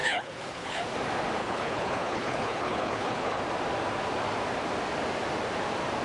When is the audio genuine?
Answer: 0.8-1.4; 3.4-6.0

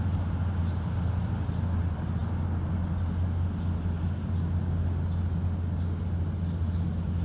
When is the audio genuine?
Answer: 0.0-7.2

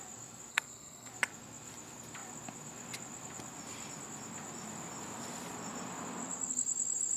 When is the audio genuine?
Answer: 0.0-0.5; 1.1-7.2